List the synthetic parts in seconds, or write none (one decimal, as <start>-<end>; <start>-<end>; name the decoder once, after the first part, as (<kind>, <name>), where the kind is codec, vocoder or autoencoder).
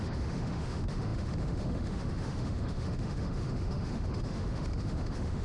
0.0-5.4 (autoencoder, DAC-VAE)